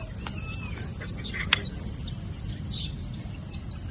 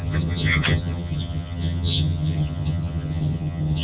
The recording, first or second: first